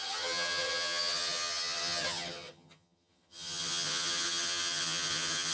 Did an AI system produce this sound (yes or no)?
yes